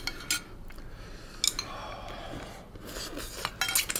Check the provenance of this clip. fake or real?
real